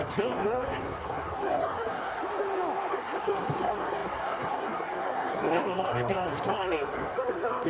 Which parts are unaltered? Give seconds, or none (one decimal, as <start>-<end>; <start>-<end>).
2.2-2.9